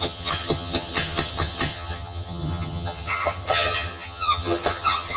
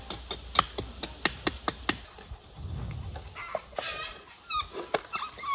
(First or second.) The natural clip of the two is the second